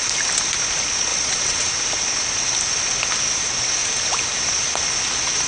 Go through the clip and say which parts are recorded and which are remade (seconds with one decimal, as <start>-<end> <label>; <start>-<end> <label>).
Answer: 0.0-1.1 recorded; 1.1-1.7 remade; 1.7-5.5 recorded